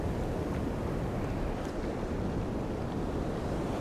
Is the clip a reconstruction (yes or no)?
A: no